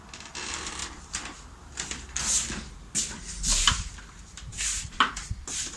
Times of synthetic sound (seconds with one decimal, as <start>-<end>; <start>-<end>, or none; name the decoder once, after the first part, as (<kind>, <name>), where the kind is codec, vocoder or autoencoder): none